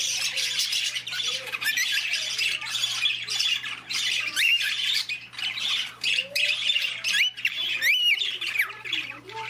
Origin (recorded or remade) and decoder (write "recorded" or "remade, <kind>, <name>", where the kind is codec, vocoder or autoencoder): remade, vocoder, BigVGAN v2